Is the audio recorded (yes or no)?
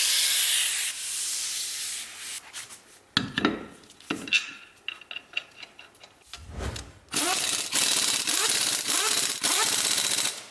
yes